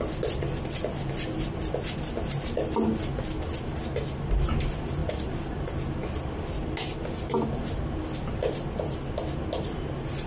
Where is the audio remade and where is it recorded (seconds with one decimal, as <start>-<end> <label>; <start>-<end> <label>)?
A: 0.0-10.3 recorded